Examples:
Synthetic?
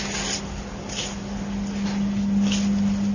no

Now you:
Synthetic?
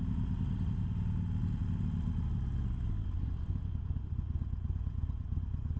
no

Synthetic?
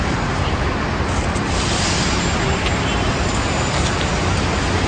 no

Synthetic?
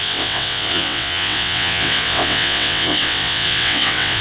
yes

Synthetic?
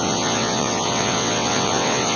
yes